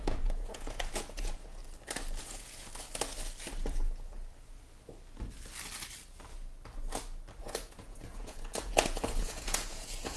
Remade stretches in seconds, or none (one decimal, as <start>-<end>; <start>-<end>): 0.0-1.6; 2.2-2.7; 7.4-10.2